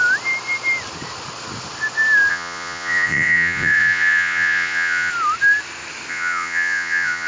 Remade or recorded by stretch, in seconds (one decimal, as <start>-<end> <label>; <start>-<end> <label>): 0.0-2.3 recorded; 2.3-5.1 remade; 5.1-6.1 recorded; 6.1-7.3 remade